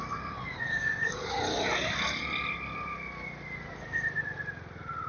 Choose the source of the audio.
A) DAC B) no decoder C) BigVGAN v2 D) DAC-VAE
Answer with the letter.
B